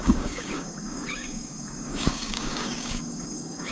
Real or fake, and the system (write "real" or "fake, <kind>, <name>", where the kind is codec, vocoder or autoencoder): fake, codec, DAC